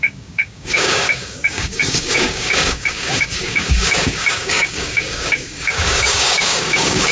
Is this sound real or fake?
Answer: fake